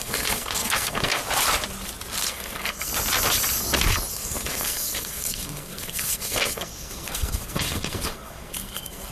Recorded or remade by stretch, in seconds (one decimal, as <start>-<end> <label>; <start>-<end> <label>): 0.0-1.2 remade; 1.2-2.2 recorded; 2.2-2.9 remade; 2.9-4.1 recorded; 4.1-9.1 remade